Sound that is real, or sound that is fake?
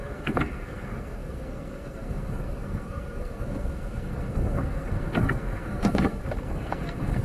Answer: fake